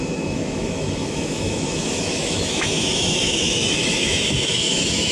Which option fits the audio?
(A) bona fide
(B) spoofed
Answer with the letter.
B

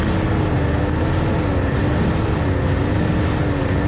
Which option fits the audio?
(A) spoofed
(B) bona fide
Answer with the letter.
B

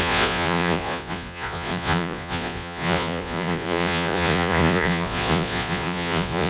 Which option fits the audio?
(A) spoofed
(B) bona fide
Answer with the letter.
A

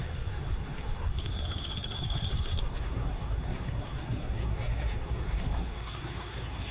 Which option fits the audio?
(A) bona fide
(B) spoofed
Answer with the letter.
B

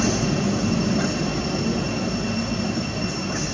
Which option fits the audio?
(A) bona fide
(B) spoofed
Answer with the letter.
A